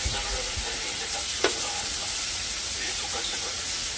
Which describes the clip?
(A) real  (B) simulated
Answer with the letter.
B